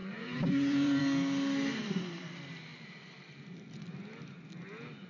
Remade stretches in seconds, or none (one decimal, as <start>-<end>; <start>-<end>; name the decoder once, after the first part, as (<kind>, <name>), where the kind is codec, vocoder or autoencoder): 0.0-1.0 (vocoder, Vocos)